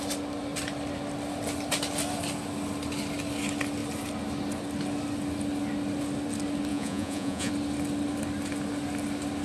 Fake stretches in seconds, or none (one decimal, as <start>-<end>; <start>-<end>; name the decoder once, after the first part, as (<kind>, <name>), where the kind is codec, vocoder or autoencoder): 6.7-7.5 (vocoder, Vocos)

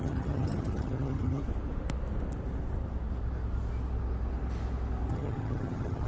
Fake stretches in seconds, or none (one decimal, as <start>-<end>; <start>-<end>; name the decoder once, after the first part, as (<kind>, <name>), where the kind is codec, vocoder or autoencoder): 0.0-1.4 (vocoder, HiFi-GAN); 5.1-6.1

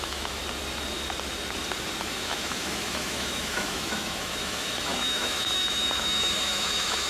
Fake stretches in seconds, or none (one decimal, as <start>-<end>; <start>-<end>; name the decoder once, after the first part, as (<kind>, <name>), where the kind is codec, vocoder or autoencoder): 0.0-0.4 (autoencoder, DAC-VAE); 2.0-7.1

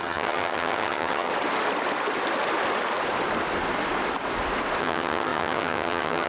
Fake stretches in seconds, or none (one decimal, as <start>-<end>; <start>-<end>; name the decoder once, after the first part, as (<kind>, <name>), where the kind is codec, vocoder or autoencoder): 0.0-1.3 (vocoder, HiFi-GAN); 4.8-6.3

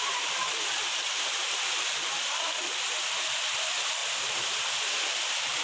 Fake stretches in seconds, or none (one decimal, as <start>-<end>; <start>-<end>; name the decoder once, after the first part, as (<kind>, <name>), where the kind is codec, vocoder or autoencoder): 4.0-4.7 (vocoder, BigVGAN v2)

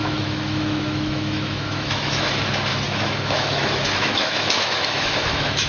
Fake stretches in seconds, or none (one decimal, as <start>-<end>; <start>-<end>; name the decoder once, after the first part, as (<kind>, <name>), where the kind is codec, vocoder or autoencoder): 0.0-2.3 (autoencoder, DAC-VAE); 2.7-5.7

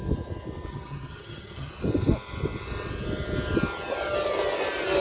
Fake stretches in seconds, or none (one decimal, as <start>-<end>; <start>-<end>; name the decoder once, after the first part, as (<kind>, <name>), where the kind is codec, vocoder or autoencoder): 0.7-1.7 (vocoder, HiFi-GAN)

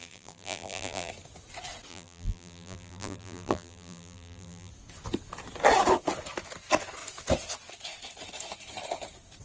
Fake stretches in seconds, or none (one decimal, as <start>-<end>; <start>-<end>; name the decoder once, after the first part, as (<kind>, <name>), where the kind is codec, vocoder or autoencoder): 0.0-1.1 (vocoder, BigVGAN v2); 1.9-4.7